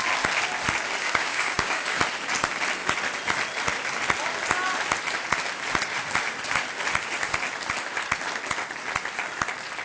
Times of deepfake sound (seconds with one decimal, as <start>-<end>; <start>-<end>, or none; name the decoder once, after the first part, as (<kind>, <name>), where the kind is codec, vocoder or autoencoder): 1.0-2.0 (codec, DAC)